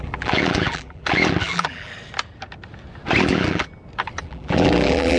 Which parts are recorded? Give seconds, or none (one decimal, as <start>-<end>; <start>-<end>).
1.9-3.2; 3.7-4.2